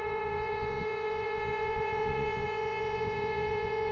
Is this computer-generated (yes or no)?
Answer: yes